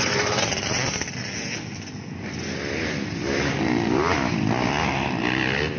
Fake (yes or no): no